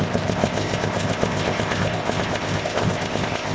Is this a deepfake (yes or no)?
yes